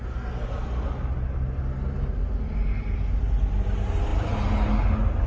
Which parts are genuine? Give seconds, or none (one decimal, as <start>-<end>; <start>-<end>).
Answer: 0.0-5.3